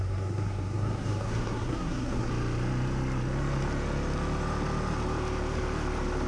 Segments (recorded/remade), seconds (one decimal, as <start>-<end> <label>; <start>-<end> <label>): 0.0-2.3 remade; 2.3-6.3 recorded

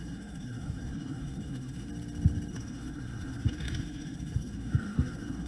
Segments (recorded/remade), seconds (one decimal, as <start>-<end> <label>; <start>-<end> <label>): 0.0-1.9 remade; 1.9-2.5 recorded; 2.5-5.5 remade

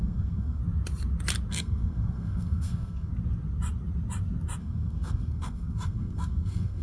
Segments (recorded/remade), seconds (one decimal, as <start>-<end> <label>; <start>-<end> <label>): 0.0-0.6 remade; 0.6-1.5 recorded; 1.5-3.1 remade; 3.1-4.6 recorded; 4.6-6.8 remade